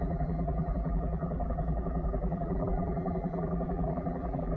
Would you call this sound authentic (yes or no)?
no